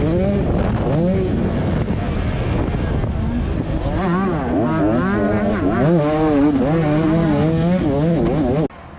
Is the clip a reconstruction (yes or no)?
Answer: no